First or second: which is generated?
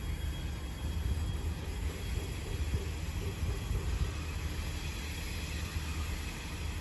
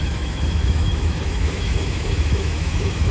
second